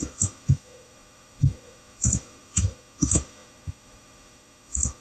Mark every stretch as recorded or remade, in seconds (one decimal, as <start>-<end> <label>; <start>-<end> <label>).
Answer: 0.0-5.0 remade